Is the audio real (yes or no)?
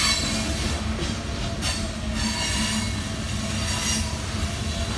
yes